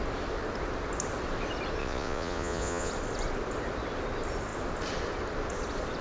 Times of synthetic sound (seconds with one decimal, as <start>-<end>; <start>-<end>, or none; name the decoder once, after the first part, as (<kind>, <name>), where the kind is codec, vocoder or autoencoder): 1.8-2.9 (vocoder, Vocos)

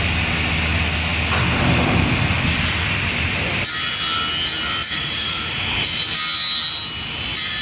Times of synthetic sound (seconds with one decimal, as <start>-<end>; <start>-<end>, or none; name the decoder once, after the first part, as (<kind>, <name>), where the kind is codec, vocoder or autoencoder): 4.8-5.8 (vocoder, Vocos)

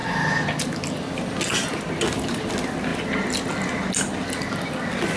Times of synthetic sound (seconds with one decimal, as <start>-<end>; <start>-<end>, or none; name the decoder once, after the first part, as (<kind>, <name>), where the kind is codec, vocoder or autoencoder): none

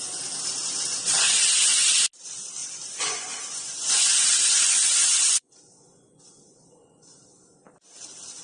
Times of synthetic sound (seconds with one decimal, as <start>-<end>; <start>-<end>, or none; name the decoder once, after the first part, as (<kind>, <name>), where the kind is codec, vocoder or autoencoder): 2.6-7.2 (vocoder, Vocos)

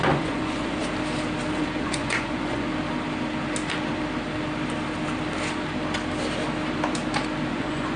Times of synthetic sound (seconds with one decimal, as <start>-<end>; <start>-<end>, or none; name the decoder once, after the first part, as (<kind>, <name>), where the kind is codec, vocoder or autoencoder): 0.0-0.8 (vocoder, Vocos); 1.8-2.7; 7.5-8.0